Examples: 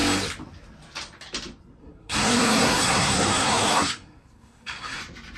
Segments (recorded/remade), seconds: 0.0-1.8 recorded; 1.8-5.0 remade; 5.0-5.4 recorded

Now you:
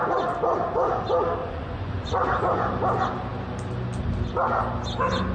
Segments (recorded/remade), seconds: 0.0-1.4 recorded; 1.4-2.3 remade; 2.3-5.3 recorded

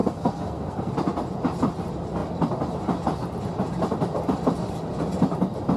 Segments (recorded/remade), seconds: 0.0-0.9 remade; 0.9-5.8 recorded

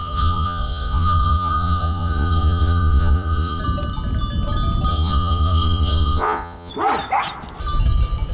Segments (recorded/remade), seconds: 0.0-3.6 remade; 3.6-4.9 recorded; 4.9-6.7 remade; 6.7-8.3 recorded

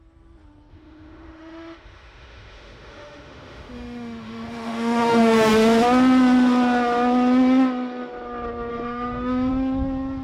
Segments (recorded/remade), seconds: 0.0-0.7 recorded; 0.7-5.5 remade; 5.5-8.7 recorded; 8.7-9.5 remade; 9.5-10.2 recorded